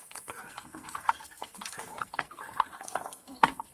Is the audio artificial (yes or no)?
yes